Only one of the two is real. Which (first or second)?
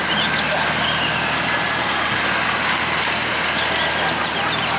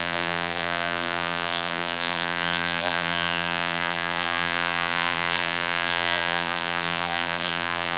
first